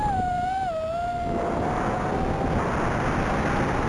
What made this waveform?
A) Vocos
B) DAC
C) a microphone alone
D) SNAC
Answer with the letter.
C